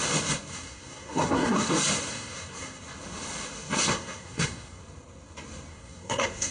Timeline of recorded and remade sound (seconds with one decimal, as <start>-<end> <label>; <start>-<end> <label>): 0.0-0.5 recorded; 0.5-1.7 remade; 1.7-2.1 recorded; 2.1-2.8 remade; 2.8-3.9 recorded; 3.9-4.8 remade; 4.8-5.7 recorded; 5.7-6.5 remade